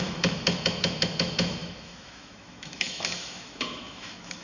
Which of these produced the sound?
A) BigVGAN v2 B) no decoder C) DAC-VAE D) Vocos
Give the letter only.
C